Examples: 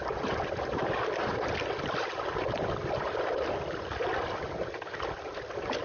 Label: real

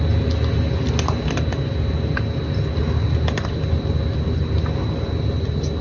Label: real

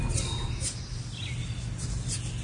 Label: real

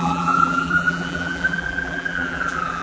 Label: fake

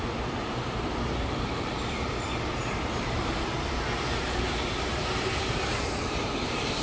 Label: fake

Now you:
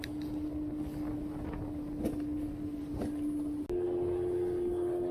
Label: real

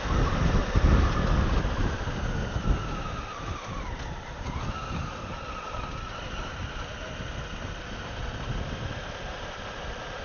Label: real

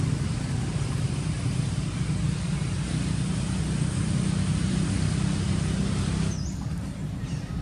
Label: fake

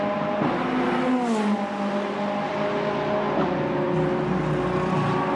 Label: real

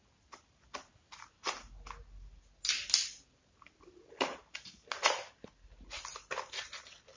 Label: real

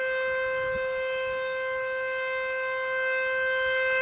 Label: real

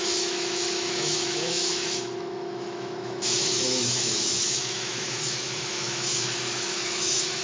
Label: fake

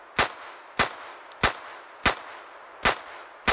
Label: real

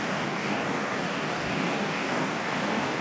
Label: fake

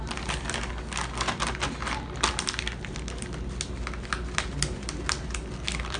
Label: real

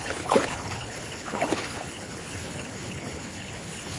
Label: fake